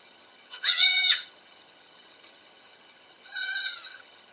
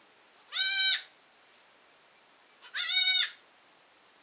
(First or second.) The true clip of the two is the second